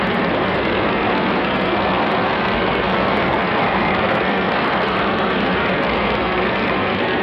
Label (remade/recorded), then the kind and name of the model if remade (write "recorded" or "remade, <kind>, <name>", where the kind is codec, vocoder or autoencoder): remade, codec, SNAC